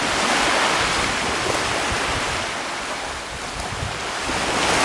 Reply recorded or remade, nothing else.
recorded